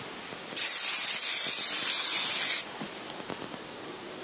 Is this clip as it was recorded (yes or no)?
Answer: yes